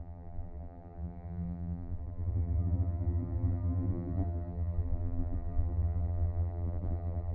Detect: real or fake fake